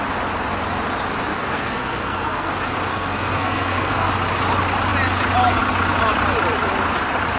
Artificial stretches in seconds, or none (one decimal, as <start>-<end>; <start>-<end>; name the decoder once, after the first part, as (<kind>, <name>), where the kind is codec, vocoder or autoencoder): 1.3-2.5 (codec, SNAC); 2.9-4.1

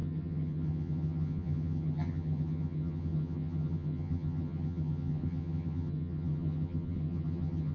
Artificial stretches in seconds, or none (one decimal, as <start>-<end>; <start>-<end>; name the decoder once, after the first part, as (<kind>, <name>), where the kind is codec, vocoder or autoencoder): 0.0-7.7 (vocoder, HiFi-GAN)

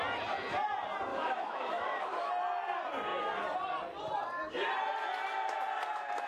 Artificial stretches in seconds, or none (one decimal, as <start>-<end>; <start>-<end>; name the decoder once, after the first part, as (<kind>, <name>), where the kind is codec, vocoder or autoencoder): 1.1-2.3 (autoencoder, DAC-VAE)

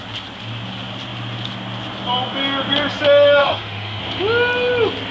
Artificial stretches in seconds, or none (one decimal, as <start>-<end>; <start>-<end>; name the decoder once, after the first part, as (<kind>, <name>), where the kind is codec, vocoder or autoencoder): 3.4-4.0 (autoencoder, DAC-VAE)

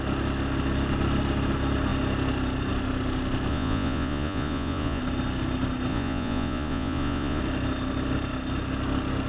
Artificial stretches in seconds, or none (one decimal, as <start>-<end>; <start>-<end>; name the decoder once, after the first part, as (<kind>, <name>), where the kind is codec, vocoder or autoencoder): 3.5-5.0 (vocoder, Vocos); 5.9-7.4

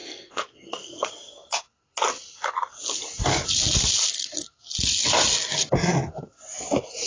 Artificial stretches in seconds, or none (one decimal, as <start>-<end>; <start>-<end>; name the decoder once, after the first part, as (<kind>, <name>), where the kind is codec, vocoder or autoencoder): 0.0-1.1 (codec, SNAC)

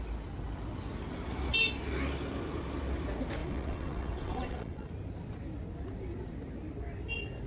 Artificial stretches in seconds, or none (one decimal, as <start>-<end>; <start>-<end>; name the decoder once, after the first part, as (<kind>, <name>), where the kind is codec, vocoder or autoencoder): 3.4-4.9 (vocoder, WaveNeXt)